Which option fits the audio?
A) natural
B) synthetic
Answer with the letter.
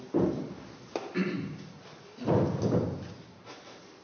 A